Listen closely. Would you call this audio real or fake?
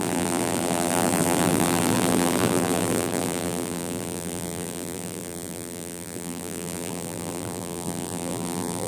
fake